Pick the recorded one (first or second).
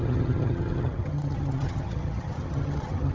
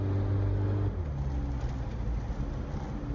second